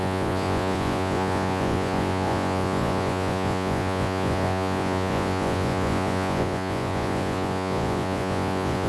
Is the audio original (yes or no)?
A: no